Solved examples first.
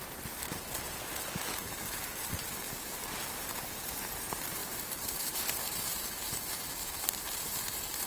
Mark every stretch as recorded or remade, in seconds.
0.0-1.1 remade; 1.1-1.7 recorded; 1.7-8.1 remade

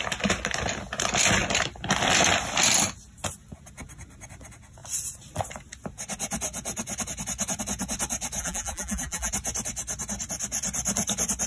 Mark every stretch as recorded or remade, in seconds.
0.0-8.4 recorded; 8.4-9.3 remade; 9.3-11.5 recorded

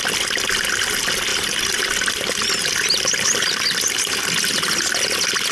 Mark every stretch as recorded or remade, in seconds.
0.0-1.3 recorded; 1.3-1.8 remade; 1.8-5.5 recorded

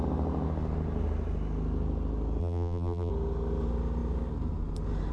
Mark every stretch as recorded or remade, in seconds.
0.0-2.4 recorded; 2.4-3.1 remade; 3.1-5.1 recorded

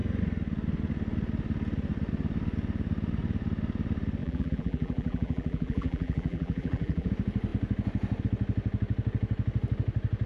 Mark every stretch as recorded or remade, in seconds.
0.0-4.2 recorded; 4.2-7.1 remade; 7.1-10.3 recorded